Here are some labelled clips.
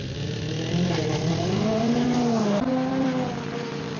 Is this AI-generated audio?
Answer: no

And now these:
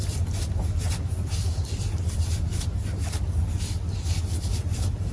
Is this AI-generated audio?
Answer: no